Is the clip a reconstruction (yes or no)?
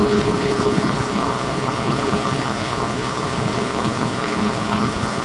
yes